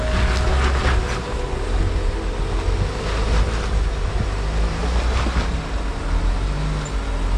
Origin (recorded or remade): recorded